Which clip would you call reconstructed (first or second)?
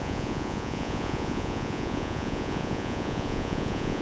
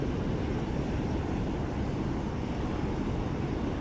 first